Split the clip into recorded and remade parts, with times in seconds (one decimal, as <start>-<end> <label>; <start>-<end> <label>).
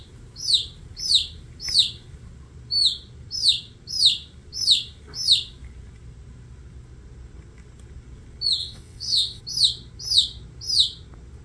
0.0-8.6 recorded; 8.6-9.4 remade; 9.4-11.4 recorded